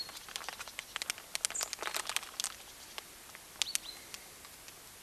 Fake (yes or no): no